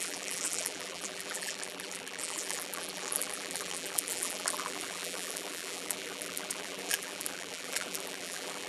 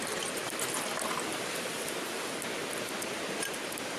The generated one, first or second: first